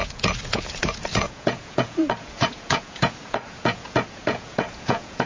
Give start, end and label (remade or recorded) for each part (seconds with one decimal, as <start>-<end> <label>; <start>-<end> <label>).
0.0-5.3 remade